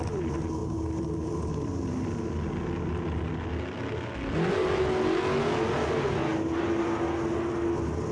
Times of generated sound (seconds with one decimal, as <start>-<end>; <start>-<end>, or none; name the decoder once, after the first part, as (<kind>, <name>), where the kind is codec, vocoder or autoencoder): none